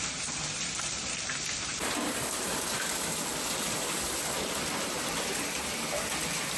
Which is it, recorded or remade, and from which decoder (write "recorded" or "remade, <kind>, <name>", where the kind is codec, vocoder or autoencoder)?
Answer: recorded